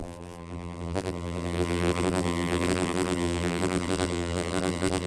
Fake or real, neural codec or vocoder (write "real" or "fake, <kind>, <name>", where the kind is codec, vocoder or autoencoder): fake, vocoder, BigVGAN v2